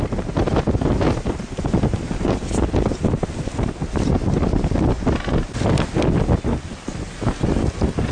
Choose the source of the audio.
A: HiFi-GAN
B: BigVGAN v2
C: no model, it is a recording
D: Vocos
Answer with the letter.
C